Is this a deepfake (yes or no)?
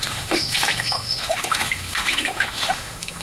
yes